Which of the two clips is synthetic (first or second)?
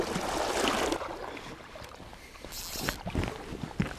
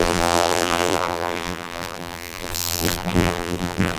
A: second